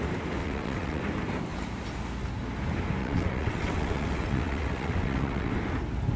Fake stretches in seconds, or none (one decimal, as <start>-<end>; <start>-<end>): 0.4-1.0; 3.0-5.5